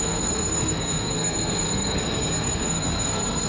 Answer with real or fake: fake